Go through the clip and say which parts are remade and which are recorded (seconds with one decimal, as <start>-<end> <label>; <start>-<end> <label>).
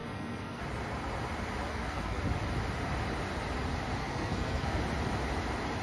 0.0-0.6 remade; 0.6-1.7 recorded; 1.7-2.2 remade; 2.2-4.0 recorded; 4.0-4.8 remade; 4.8-5.8 recorded